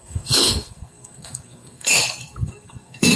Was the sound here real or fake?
fake